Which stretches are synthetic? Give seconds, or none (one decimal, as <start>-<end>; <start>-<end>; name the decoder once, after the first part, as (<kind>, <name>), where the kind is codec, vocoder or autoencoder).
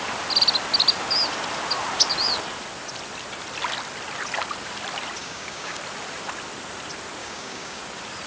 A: 5.2-5.8 (codec, DAC); 7.2-7.8